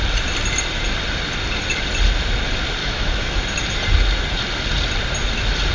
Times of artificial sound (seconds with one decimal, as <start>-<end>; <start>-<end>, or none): 2.8-3.3